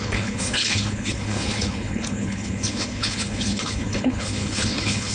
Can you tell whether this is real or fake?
fake